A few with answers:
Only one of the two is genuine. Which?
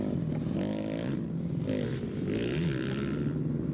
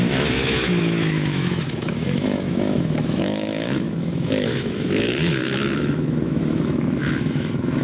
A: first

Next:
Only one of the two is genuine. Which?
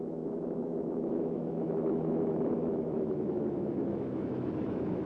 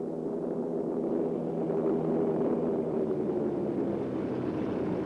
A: second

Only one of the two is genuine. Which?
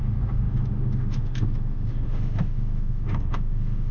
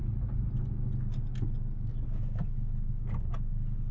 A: second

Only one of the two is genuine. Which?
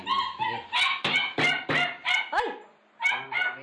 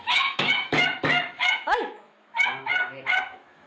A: first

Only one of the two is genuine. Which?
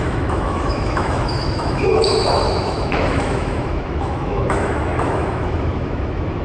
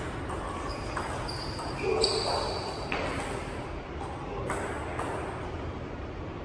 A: second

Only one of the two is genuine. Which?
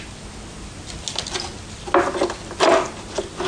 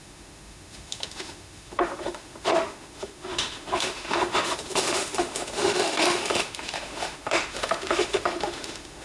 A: first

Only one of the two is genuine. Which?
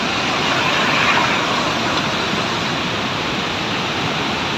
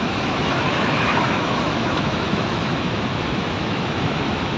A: first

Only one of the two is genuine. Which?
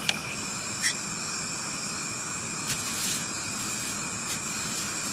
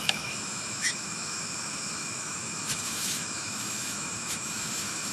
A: first